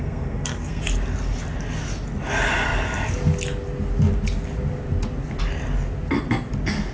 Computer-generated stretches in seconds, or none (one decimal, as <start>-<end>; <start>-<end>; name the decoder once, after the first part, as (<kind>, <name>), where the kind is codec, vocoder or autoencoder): 0.0-0.8 (codec, SNAC)